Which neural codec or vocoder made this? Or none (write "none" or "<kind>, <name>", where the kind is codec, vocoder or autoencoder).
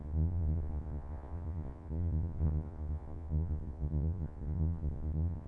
vocoder, Vocos